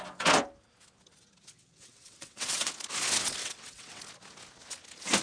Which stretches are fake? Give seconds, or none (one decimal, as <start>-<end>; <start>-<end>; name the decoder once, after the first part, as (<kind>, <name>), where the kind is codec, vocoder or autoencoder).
1.6-2.7 (vocoder, WaveNeXt); 3.4-4.0